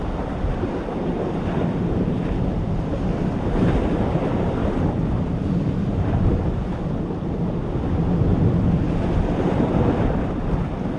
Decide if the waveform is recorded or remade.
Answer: recorded